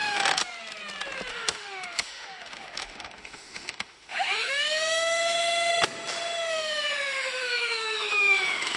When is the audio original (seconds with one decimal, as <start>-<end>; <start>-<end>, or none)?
0.4-1.3; 5.7-6.5